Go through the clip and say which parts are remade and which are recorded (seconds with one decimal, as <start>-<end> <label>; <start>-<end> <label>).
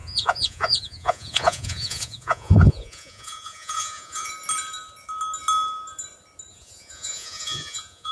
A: 0.0-4.3 remade; 4.3-6.5 recorded; 6.5-8.1 remade